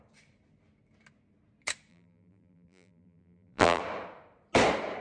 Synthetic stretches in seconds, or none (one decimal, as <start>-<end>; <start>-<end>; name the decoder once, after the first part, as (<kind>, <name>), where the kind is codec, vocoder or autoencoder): 1.9-3.8 (vocoder, BigVGAN v2)